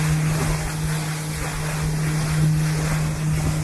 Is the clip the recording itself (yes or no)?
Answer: yes